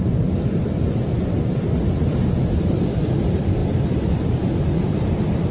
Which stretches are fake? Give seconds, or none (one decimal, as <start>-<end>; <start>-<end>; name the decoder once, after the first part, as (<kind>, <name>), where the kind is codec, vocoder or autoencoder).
0.0-1.6 (vocoder, BigVGAN v2); 2.4-3.1; 3.6-5.1

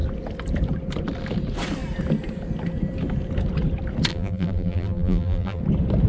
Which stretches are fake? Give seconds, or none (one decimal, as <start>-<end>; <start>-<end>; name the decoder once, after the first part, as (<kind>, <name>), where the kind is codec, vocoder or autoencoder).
4.1-5.6 (vocoder, BigVGAN v2)

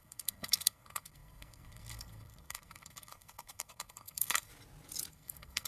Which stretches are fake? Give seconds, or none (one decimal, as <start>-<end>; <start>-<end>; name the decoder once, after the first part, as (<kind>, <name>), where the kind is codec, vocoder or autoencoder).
0.0-4.5 (codec, SNAC); 5.1-5.7

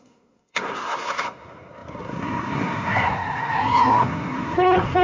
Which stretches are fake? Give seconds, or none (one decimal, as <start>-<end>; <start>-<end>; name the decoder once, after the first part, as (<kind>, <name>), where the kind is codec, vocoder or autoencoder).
0.0-5.0 (codec, SNAC)